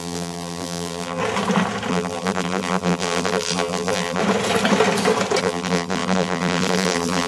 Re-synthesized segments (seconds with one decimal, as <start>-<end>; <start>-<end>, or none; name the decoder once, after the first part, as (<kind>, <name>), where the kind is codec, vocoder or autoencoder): 0.0-1.2 (vocoder, BigVGAN v2); 1.9-4.2; 5.4-7.3